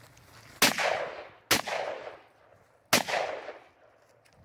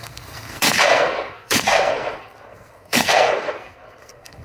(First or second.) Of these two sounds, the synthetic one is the second